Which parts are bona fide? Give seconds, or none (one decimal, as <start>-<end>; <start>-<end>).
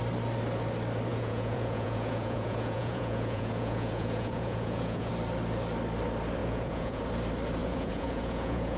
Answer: 0.0-1.1; 5.1-6.4; 7.0-7.6